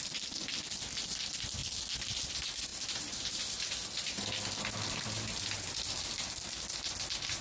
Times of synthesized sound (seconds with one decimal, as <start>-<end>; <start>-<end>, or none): none